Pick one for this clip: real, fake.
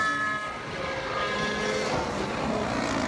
real